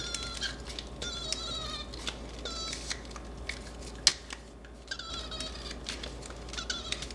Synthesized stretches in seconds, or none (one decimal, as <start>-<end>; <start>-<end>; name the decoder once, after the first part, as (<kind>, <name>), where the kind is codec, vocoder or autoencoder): none